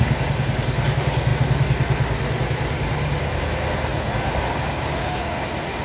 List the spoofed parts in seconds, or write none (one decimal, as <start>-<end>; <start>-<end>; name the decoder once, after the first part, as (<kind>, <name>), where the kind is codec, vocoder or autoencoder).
none